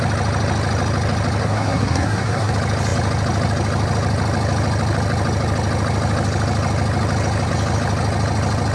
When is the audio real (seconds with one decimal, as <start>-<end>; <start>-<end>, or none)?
0.0-1.4; 2.5-8.7